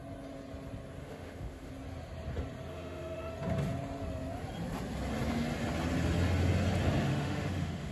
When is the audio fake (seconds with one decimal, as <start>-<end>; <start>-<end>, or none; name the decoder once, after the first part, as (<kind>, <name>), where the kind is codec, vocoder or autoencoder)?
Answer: 1.0-1.7 (autoencoder, DAC-VAE); 2.7-3.3; 7.1-7.9